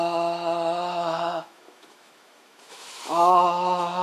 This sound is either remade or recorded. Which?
remade